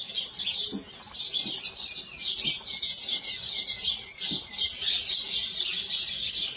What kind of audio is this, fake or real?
real